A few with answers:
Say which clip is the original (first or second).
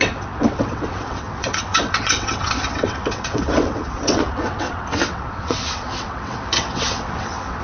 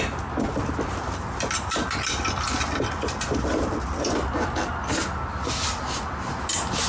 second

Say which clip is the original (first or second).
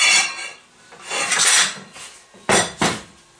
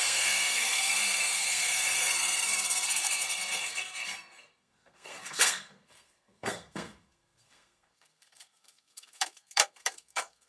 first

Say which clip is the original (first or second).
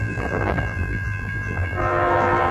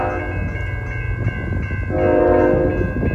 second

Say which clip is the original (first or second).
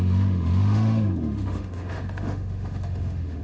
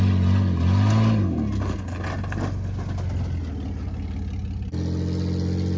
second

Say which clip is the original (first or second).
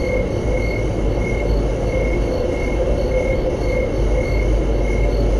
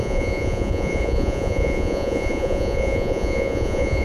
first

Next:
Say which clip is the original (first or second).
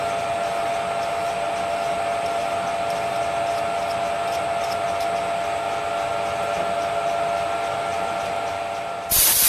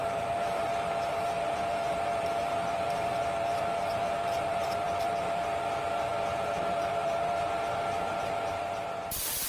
first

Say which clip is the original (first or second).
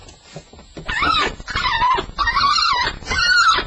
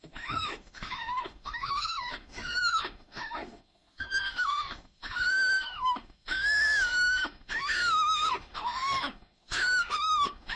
first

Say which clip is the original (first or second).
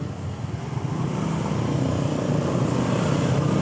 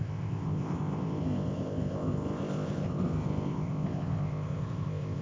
first